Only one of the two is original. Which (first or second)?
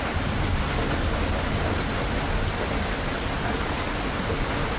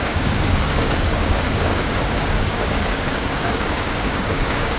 first